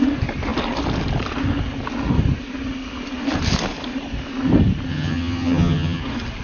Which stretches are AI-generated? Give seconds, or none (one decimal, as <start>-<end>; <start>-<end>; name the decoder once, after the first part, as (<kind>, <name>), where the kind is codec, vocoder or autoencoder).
4.9-6.0 (vocoder, HiFi-GAN)